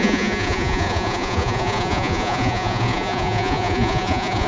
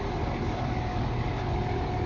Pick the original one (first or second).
second